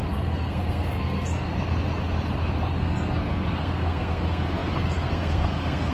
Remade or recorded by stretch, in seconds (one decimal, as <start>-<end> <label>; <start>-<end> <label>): 0.0-1.5 remade; 1.5-2.7 recorded; 2.7-5.9 remade